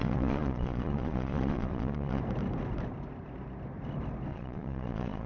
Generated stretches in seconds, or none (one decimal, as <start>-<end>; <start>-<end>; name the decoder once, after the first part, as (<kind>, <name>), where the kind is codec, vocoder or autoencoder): 0.0-2.2 (vocoder, Vocos); 4.3-5.3